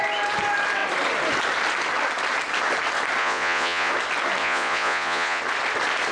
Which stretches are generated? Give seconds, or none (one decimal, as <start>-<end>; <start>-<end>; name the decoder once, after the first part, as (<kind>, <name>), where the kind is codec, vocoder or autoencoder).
3.2-3.9 (vocoder, Vocos); 4.4-5.4